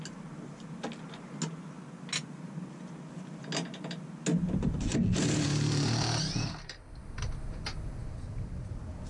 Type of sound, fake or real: real